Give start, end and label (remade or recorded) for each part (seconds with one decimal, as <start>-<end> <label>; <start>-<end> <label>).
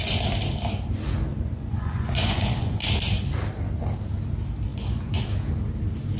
0.0-1.3 recorded; 1.3-2.8 remade; 2.8-4.7 recorded; 4.7-5.2 remade; 5.2-6.2 recorded